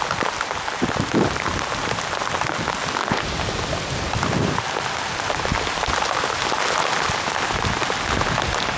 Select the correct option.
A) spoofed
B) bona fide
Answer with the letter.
B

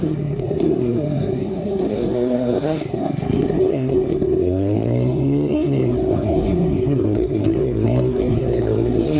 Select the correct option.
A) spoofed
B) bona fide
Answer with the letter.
A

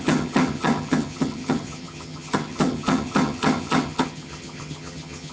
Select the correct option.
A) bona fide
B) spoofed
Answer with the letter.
B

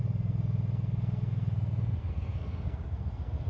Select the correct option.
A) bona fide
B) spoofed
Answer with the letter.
B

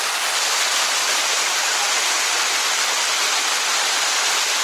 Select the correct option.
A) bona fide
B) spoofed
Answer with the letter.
A